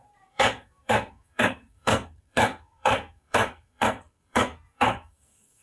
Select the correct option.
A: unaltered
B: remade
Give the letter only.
B